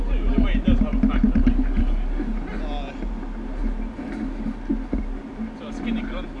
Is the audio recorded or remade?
recorded